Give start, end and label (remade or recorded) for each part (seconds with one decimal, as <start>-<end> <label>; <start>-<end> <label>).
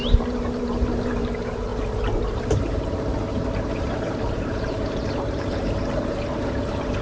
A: 0.0-1.7 remade; 1.7-2.3 recorded; 2.3-7.0 remade